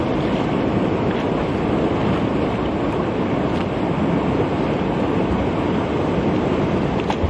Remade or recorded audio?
recorded